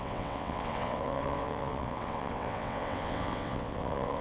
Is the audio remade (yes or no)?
yes